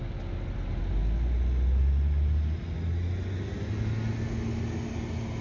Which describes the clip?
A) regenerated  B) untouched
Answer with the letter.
B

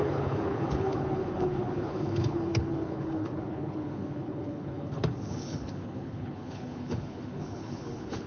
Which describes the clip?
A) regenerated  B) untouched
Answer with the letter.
A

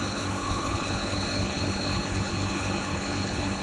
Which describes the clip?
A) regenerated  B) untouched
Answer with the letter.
A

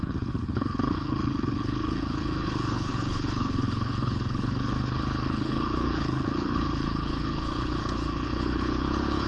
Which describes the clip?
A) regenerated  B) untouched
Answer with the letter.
A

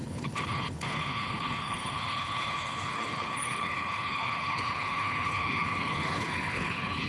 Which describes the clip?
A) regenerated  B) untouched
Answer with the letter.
A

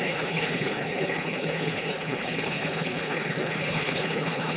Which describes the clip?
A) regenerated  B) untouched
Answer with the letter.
A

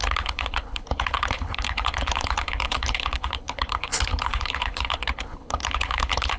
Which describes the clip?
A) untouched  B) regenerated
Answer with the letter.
B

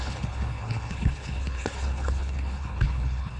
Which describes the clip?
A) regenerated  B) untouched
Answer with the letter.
A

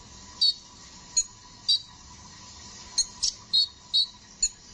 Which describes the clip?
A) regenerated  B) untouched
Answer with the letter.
B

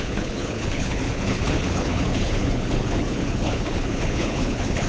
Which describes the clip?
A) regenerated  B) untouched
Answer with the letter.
A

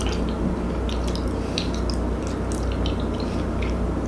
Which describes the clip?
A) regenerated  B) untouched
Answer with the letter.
B